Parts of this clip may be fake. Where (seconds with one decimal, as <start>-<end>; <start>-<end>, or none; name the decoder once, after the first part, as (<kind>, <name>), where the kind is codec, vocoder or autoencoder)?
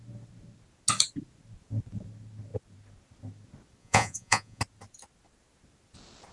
3.8-4.6 (vocoder, Vocos)